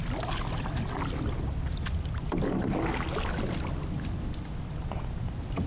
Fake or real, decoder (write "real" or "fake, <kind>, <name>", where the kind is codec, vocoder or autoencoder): real